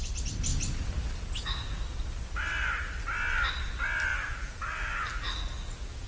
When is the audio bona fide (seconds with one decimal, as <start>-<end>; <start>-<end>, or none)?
0.0-4.1

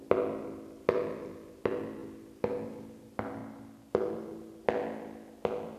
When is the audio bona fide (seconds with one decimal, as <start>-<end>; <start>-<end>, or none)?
0.0-5.8